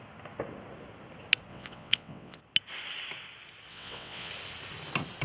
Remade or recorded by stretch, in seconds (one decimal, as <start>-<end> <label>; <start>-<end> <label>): 0.0-1.5 recorded; 1.5-2.4 remade; 2.4-3.7 recorded; 3.7-4.3 remade; 4.3-5.2 recorded